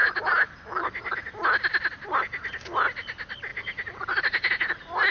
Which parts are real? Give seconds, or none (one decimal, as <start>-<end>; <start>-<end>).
2.2-3.5; 4.5-5.1